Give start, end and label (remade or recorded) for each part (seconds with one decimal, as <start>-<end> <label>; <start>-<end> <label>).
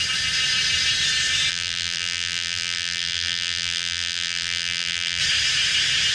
0.0-1.5 recorded; 1.5-5.2 remade; 5.2-6.1 recorded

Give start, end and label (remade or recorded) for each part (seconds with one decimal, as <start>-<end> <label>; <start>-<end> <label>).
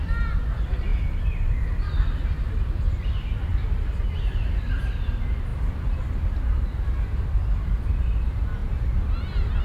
0.0-3.5 remade; 3.5-5.0 recorded; 5.0-9.6 remade